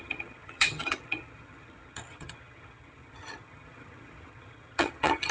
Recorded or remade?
remade